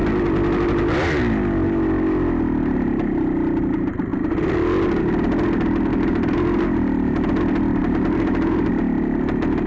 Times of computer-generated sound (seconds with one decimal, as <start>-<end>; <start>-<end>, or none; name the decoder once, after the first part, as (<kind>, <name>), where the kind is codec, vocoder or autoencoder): 5.9-6.6 (vocoder, BigVGAN v2); 7.8-8.7